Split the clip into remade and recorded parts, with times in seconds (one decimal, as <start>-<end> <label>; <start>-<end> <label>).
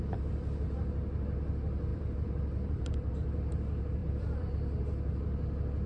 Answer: 0.0-1.9 recorded; 1.9-3.1 remade; 3.1-4.0 recorded; 4.0-4.5 remade; 4.5-5.9 recorded